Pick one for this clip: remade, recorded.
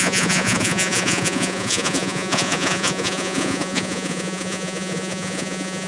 remade